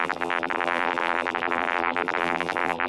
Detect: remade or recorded remade